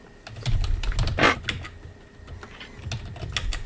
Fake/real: real